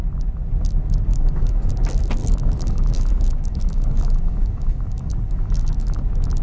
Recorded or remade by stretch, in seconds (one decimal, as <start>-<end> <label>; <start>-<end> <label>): 0.0-1.1 recorded; 1.1-1.7 remade; 1.7-2.2 recorded; 2.2-6.0 remade; 6.0-6.4 recorded